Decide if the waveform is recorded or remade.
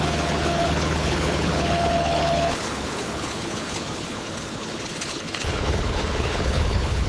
remade